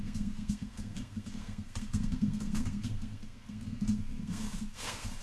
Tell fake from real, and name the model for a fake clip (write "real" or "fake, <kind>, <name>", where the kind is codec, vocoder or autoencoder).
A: fake, codec, SNAC